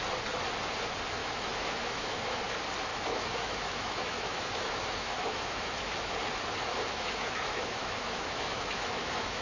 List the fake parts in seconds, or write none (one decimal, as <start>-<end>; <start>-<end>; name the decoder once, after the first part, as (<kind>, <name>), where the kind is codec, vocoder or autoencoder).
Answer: 1.2-2.4 (autoencoder, DAC-VAE); 2.9-6.1; 6.7-9.4